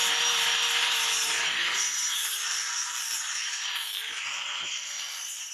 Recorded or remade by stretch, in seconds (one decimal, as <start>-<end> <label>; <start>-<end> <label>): 0.0-2.2 recorded; 2.2-5.5 remade